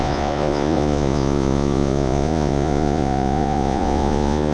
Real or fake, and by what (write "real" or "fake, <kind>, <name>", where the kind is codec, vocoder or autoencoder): fake, vocoder, Vocos